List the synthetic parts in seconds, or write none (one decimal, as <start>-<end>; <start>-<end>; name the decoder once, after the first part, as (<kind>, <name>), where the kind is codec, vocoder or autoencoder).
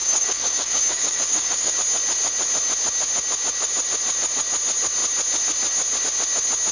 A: 0.0-1.7 (codec, DAC)